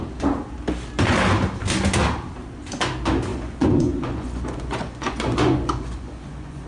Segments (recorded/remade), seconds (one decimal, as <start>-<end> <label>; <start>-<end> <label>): 0.0-3.3 recorded; 3.3-6.7 remade